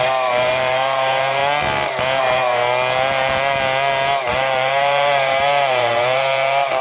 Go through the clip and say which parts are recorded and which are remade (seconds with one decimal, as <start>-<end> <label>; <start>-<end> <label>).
0.0-1.4 remade; 1.4-2.2 recorded; 2.2-2.6 remade; 2.6-4.3 recorded; 4.3-6.8 remade